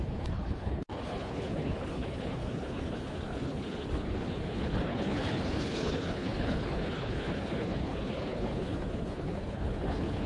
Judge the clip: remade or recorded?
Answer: remade